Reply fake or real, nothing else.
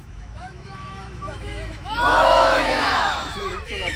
fake